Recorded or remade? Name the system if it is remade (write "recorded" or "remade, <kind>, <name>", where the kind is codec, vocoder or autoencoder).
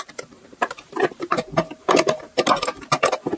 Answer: remade, vocoder, BigVGAN v2